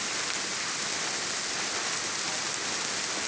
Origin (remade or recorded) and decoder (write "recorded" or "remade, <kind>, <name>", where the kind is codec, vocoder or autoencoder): recorded